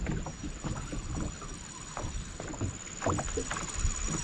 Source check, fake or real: real